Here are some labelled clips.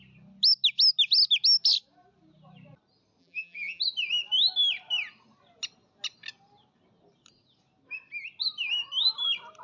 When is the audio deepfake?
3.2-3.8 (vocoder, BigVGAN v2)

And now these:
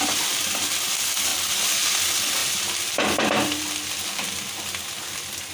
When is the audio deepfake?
1.3-2.0 (vocoder, BigVGAN v2); 2.4-4.5

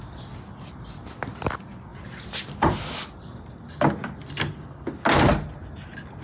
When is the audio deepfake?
none

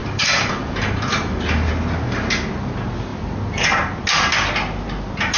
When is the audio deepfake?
0.0-1.7 (vocoder, BigVGAN v2)

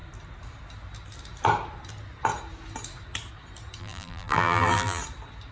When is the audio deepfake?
3.8-5.0 (vocoder, BigVGAN v2)

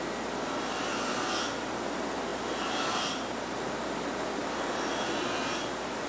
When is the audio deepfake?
2.3-3.0 (vocoder, BigVGAN v2); 4.4-6.1

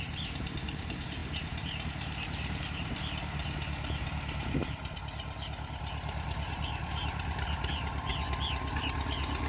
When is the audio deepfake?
0.0-3.4 (vocoder, BigVGAN v2); 6.5-8.1; 8.8-9.5